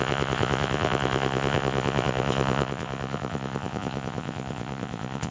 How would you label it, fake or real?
fake